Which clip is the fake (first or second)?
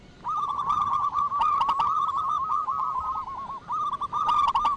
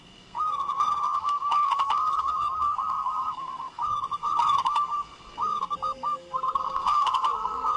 second